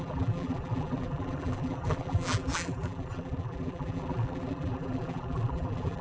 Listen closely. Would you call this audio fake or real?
fake